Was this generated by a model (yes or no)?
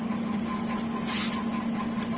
no